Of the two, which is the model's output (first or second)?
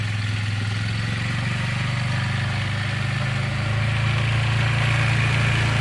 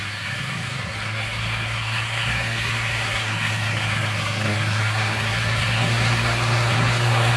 second